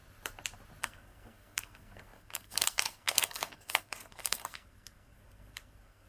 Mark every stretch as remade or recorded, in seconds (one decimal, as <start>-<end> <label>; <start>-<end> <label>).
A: 0.0-0.8 recorded; 0.8-6.1 remade